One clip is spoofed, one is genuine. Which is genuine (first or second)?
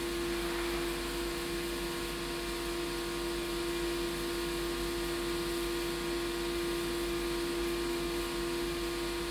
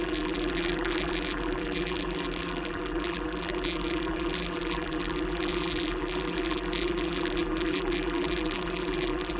first